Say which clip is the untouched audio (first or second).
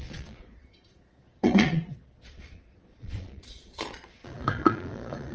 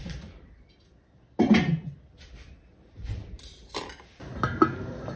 second